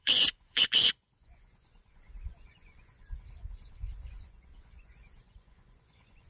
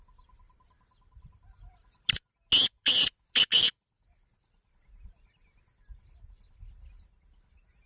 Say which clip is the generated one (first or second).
first